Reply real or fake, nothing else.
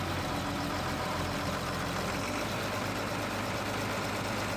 real